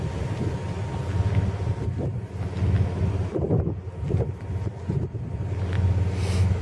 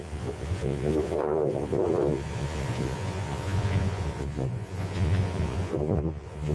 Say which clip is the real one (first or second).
first